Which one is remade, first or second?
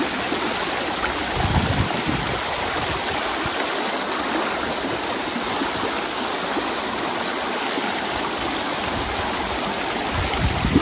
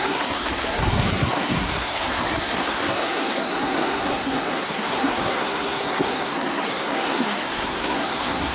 second